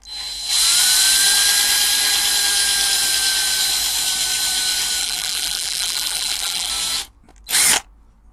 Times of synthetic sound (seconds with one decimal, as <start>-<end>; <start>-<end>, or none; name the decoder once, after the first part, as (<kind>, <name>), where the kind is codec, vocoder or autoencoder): 5.0-6.7 (vocoder, BigVGAN v2)